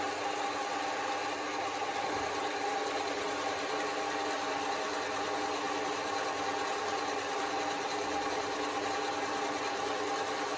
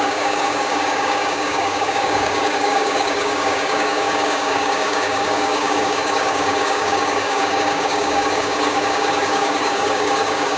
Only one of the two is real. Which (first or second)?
first